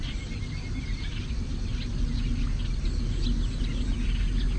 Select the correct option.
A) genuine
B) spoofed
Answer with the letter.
A